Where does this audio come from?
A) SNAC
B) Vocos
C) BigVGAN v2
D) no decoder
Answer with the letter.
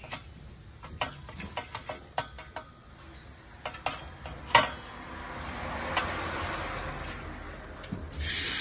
D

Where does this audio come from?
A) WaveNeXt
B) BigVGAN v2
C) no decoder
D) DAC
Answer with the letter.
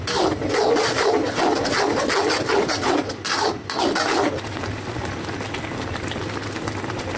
C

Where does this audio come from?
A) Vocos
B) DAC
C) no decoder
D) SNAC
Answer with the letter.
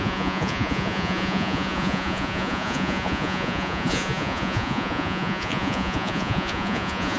A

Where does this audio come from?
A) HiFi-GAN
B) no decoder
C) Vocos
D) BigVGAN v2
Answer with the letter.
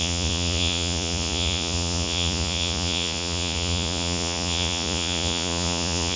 C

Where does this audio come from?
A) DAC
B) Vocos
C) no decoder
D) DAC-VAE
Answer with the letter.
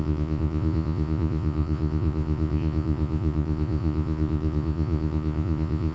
B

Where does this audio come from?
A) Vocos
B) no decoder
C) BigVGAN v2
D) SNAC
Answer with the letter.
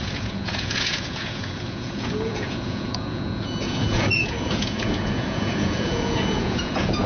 A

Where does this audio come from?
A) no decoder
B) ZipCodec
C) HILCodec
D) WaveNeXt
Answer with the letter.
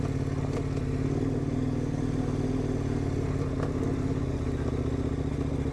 A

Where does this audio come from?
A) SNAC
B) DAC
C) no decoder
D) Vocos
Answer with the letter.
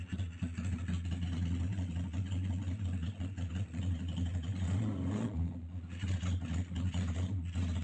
D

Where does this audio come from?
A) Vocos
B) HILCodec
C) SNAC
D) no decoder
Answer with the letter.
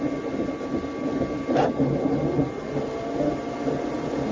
D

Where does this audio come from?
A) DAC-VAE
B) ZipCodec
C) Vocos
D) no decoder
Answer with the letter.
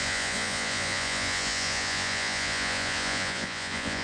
C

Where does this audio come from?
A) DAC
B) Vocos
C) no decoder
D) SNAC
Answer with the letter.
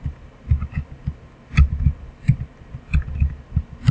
C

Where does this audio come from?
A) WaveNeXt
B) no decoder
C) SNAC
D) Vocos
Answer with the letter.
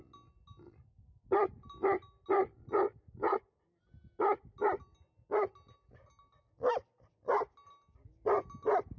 B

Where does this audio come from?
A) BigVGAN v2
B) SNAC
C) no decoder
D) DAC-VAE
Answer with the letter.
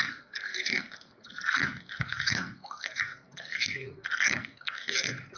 B